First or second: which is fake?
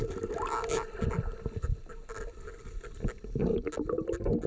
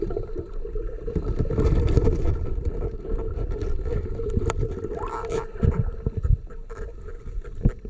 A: second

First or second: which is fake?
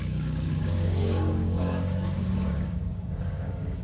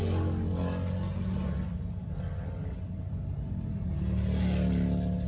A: first